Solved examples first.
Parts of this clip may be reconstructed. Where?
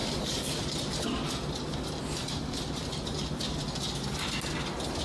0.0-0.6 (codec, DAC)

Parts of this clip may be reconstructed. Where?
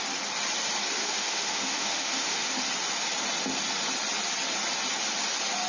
1.0-2.6 (autoencoder, DAC-VAE)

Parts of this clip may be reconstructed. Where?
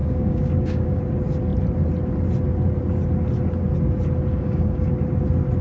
0.0-1.0 (codec, DAC); 4.3-4.9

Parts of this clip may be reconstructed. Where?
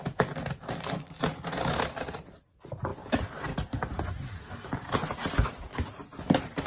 none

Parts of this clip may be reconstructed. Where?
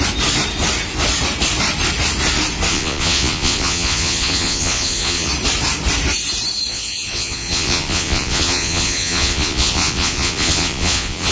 2.7-5.3 (vocoder, Vocos); 6.7-11.3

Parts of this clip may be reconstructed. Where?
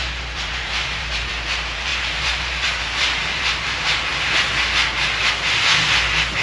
0.0-4.1 (vocoder, BigVGAN v2)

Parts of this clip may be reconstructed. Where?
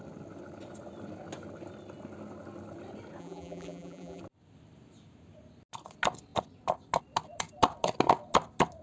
3.2-4.2 (vocoder, BigVGAN v2)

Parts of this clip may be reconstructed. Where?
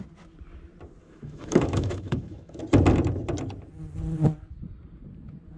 1.0-2.6 (autoencoder, DAC-VAE)